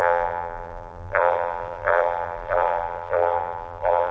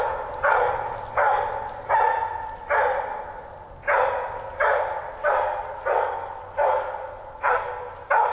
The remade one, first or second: first